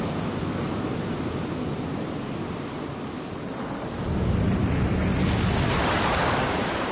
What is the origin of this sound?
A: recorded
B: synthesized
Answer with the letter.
A